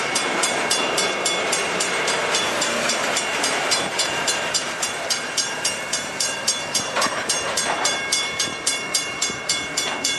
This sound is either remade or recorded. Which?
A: remade